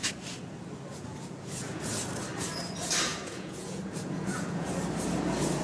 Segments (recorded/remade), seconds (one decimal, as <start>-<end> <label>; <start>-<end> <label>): 0.0-0.9 recorded; 0.9-1.9 remade; 1.9-3.1 recorded; 3.1-4.7 remade; 4.7-5.6 recorded

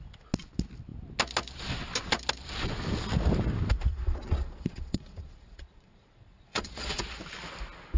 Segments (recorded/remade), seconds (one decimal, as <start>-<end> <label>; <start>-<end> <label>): 0.0-3.9 recorded; 3.9-7.0 remade; 7.0-8.0 recorded

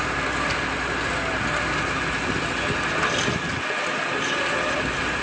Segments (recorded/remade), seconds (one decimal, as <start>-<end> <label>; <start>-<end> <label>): 0.0-5.2 recorded

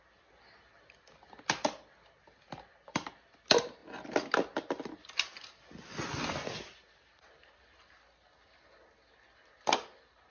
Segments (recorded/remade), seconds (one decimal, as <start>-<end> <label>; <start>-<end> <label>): 0.0-10.3 recorded

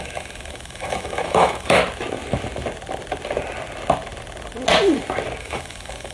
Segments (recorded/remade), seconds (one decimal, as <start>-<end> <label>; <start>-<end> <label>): 0.0-1.8 remade; 1.8-5.4 recorded; 5.4-6.1 remade